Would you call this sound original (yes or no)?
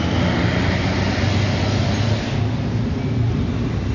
yes